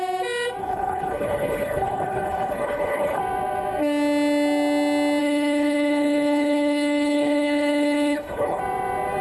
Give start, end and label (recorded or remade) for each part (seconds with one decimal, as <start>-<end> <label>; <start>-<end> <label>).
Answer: 0.0-0.6 recorded; 0.6-3.2 remade; 3.2-5.2 recorded; 5.2-8.6 remade; 8.6-9.2 recorded